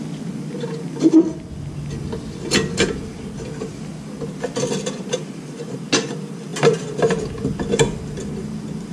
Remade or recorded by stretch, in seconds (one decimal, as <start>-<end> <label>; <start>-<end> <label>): 0.0-8.9 recorded